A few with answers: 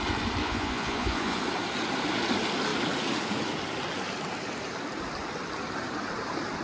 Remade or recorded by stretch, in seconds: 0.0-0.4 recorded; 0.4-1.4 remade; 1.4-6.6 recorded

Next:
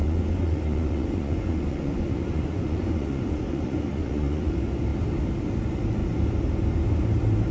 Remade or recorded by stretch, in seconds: 0.0-4.5 remade; 4.5-7.5 recorded

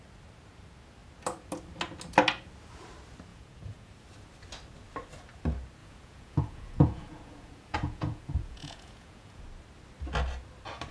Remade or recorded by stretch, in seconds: 0.0-3.3 recorded; 3.3-3.9 remade; 3.9-5.8 recorded; 5.8-9.4 remade; 9.4-10.9 recorded

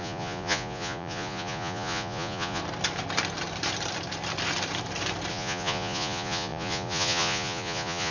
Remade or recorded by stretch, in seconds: 0.0-2.6 remade; 2.6-5.3 recorded; 5.3-8.1 remade

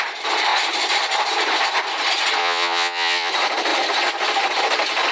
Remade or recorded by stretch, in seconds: 0.0-2.4 recorded; 2.4-3.3 remade; 3.3-5.1 recorded

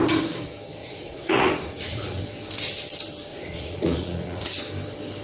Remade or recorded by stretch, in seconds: 0.0-0.8 recorded; 0.8-2.2 remade; 2.2-3.3 recorded; 3.3-4.5 remade; 4.5-5.2 recorded